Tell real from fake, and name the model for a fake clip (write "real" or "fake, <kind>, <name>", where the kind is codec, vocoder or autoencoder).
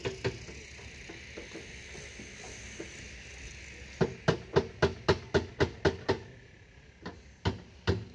real